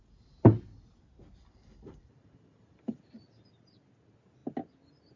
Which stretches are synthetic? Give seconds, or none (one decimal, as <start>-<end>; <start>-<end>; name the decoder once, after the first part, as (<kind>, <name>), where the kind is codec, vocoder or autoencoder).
1.4-3.0 (vocoder, BigVGAN v2)

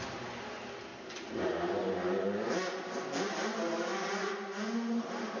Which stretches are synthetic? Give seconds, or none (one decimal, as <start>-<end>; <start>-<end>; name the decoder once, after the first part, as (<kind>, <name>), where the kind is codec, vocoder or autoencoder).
none

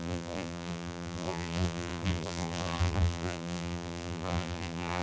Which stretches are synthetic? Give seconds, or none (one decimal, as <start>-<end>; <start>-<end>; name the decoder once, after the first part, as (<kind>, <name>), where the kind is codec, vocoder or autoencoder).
0.0-5.0 (vocoder, BigVGAN v2)

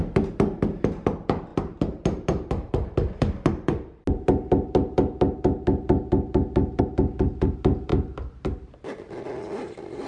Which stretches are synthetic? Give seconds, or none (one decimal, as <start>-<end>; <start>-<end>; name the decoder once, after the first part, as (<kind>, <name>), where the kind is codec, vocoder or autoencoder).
none

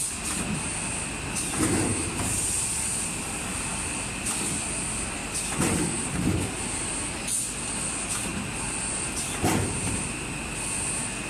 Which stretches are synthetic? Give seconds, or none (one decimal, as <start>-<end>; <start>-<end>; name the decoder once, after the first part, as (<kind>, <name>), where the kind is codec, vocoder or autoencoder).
1.9-3.6 (vocoder, BigVGAN v2)

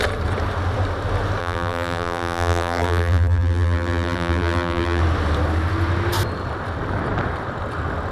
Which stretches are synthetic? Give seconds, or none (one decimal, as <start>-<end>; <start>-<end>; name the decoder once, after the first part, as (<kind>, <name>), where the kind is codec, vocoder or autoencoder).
1.4-5.0 (vocoder, BigVGAN v2)

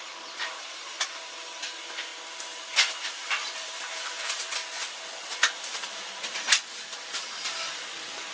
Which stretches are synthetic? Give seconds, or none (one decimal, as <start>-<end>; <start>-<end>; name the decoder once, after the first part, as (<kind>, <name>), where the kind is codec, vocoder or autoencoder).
0.0-2.1 (vocoder, BigVGAN v2); 3.1-4.6; 5.3-8.3